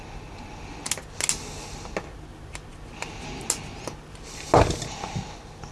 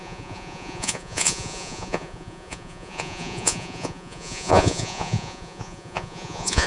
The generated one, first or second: second